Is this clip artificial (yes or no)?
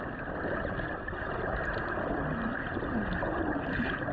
yes